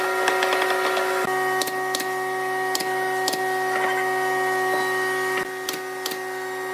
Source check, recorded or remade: recorded